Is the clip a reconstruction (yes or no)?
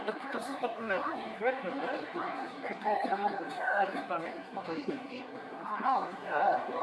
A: yes